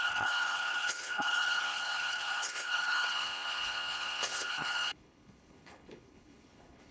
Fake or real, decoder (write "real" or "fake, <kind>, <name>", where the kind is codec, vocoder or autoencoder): fake, codec, HILCodec